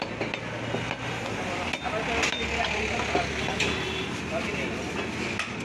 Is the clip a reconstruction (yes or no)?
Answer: no